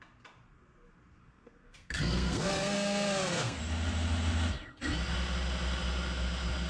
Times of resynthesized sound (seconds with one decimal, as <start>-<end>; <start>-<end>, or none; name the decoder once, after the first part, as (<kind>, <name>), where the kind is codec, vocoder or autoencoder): 1.2-3.6 (codec, SNAC)